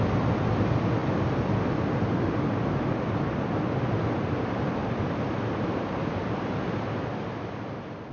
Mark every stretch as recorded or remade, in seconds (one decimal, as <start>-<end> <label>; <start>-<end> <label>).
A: 0.0-8.1 recorded